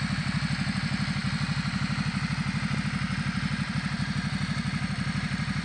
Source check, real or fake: real